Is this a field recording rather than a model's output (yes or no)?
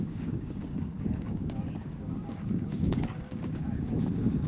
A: no